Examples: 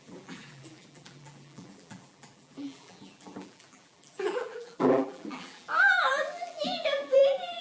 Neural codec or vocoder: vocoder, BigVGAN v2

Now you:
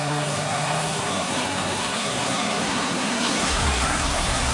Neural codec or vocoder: codec, SNAC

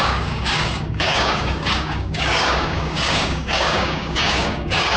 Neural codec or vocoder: codec, DAC